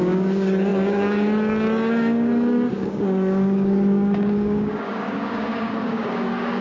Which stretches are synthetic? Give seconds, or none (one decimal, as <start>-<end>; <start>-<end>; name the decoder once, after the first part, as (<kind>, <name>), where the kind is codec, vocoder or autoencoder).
0.0-6.6 (codec, DAC)